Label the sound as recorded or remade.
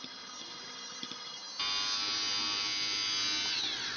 recorded